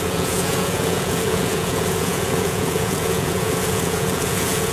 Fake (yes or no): yes